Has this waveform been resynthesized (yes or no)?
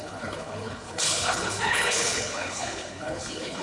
yes